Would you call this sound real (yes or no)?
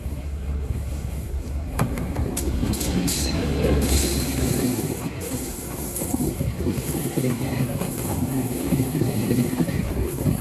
no